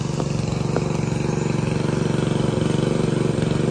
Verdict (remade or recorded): recorded